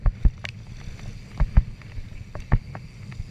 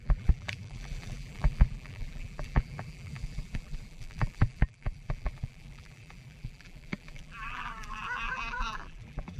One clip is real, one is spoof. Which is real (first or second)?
first